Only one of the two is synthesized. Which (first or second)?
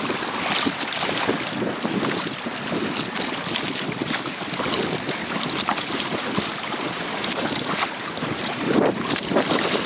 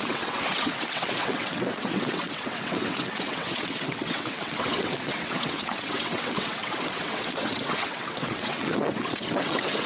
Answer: second